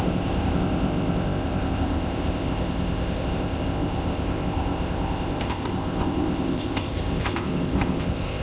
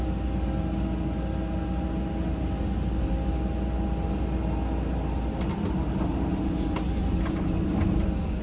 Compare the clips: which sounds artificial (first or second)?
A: first